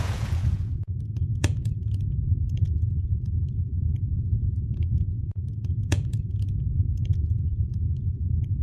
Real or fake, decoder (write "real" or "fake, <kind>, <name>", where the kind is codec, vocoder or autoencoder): fake, vocoder, Vocos